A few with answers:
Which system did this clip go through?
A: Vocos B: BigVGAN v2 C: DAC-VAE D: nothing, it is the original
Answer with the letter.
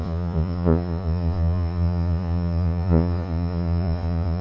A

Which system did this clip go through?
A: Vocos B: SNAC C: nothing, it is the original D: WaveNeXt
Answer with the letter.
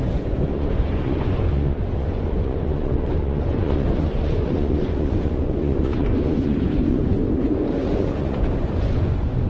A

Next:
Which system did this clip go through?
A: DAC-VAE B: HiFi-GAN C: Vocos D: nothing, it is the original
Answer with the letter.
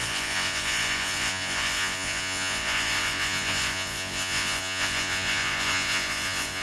C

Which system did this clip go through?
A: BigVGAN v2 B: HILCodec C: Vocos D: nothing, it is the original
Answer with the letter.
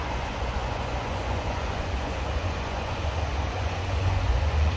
C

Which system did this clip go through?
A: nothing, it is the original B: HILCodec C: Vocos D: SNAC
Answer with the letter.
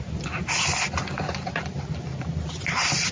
A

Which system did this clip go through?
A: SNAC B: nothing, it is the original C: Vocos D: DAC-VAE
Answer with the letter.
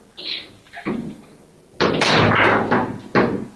B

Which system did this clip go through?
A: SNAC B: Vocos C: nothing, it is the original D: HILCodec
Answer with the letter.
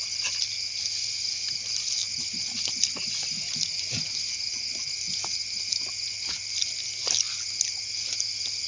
C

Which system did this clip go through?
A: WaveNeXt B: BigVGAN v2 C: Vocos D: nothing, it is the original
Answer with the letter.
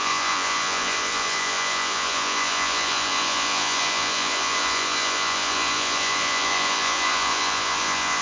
C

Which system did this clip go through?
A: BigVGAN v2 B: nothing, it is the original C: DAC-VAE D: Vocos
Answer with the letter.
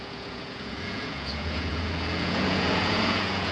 D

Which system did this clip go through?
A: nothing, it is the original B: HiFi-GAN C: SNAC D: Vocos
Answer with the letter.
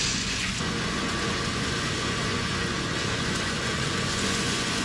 D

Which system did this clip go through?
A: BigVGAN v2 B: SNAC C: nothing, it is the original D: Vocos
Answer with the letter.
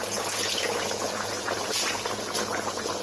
D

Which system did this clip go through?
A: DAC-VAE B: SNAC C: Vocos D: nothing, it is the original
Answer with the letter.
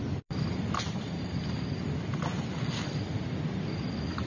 D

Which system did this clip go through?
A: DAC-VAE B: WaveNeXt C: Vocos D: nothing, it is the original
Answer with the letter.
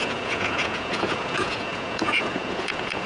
C